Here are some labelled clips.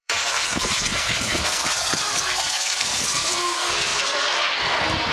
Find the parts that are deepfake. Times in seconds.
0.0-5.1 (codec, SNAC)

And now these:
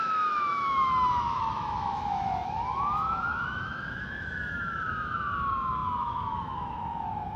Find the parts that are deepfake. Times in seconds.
0.0-7.4 (autoencoder, DAC-VAE)

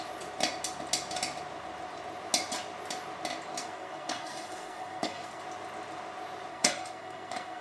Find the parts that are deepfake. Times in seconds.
3.6-5.4 (codec, SNAC); 6.5-7.6

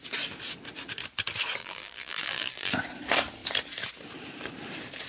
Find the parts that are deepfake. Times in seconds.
1.6-2.7 (vocoder, BigVGAN v2)